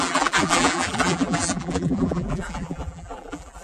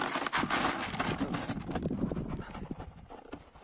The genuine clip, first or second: second